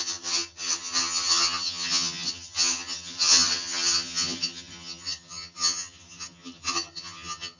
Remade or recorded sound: remade